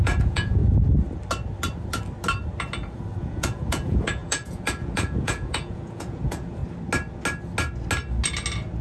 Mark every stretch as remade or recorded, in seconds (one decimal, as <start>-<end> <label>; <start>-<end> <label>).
0.0-0.6 remade; 0.6-3.2 recorded; 3.2-6.6 remade; 6.6-8.8 recorded